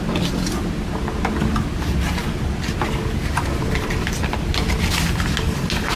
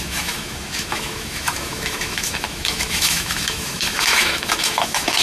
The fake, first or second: second